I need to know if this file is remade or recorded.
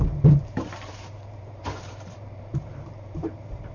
remade